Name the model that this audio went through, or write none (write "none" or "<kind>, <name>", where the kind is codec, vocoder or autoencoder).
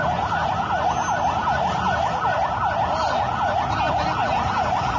none